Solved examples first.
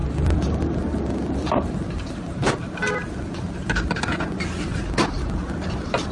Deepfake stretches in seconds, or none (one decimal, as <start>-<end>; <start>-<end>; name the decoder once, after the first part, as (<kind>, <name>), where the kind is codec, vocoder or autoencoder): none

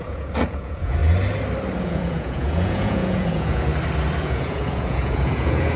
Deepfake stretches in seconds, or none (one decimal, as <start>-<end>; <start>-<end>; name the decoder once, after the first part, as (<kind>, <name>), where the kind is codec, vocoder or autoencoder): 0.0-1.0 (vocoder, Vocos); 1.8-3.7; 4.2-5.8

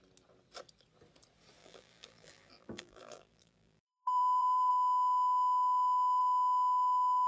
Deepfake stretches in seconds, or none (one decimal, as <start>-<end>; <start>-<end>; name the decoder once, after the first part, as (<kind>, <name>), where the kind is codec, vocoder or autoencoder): 1.6-4.7 (vocoder, BigVGAN v2)

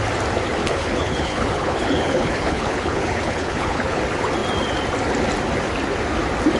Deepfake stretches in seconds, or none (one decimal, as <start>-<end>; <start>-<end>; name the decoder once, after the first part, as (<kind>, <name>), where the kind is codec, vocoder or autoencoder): 0.6-4.0 (codec, HILCodec)

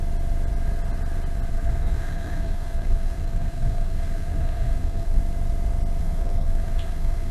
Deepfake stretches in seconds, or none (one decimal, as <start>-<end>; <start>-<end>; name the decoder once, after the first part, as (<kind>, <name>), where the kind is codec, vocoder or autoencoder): 1.5-5.2 (codec, SNAC); 6.0-7.3

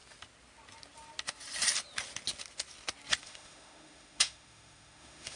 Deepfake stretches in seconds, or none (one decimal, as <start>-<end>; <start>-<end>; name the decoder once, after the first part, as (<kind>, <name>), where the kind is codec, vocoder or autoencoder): 3.2-5.4 (autoencoder, DAC-VAE)

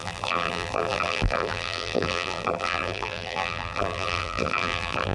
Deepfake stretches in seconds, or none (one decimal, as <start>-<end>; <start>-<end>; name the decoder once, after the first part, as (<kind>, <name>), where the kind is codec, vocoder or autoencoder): 0.0-5.1 (vocoder, BigVGAN v2)